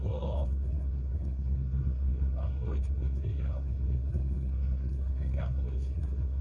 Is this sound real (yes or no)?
no